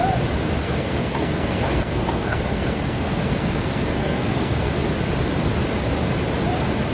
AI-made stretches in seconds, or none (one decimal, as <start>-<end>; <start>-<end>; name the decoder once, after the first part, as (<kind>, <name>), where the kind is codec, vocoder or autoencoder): 0.6-4.7 (codec, SNAC)